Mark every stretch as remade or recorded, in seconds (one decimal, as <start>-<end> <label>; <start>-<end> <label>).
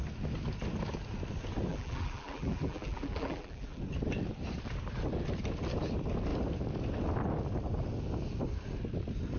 0.0-1.7 recorded; 1.7-3.8 remade; 3.8-9.4 recorded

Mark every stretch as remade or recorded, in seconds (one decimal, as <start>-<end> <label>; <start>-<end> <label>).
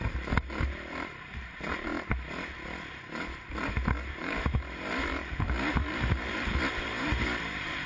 0.0-1.9 remade; 1.9-4.2 recorded; 4.2-7.9 remade